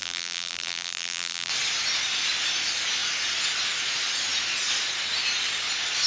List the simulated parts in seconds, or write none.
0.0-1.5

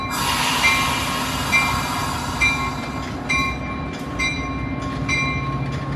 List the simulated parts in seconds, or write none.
3.4-4.2

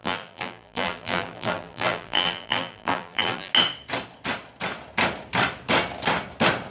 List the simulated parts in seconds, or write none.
0.0-3.5

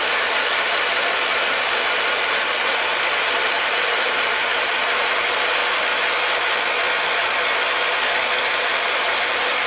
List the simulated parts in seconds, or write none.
0.0-5.6; 8.4-9.7

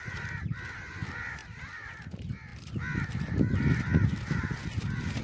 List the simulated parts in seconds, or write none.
1.4-2.0; 2.5-4.4

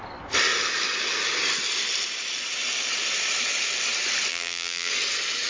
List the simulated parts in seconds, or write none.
4.3-4.9